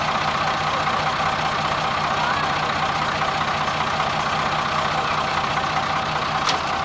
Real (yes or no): yes